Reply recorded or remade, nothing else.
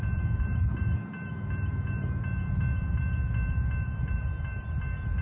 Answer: remade